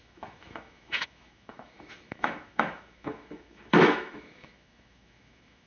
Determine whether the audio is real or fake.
fake